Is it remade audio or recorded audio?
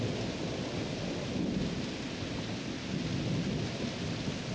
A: recorded